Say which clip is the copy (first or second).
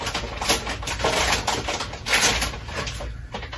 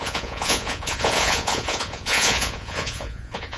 second